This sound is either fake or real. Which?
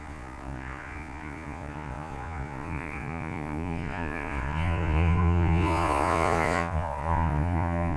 fake